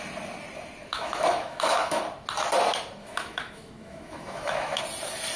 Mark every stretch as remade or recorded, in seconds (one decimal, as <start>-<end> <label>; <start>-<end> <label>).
0.0-0.9 recorded; 0.9-2.0 remade; 2.0-3.0 recorded; 3.0-4.8 remade; 4.8-5.4 recorded